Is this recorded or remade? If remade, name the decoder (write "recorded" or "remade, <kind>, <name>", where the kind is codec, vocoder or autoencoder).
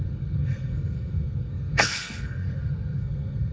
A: remade, codec, SNAC